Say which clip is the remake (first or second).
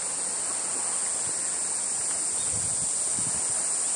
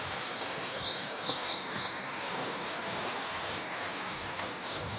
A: second